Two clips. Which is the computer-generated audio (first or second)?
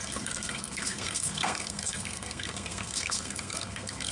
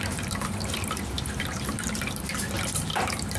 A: first